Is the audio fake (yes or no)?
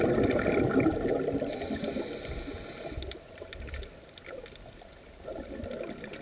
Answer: no